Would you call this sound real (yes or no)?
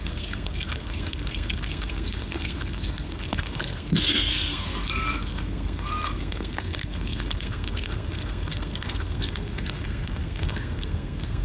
no